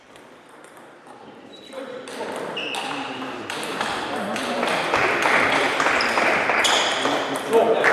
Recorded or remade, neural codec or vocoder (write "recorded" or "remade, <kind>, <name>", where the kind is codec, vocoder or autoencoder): remade, vocoder, BigVGAN v2